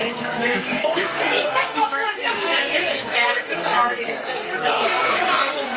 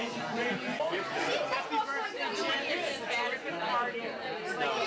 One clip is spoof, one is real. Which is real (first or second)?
second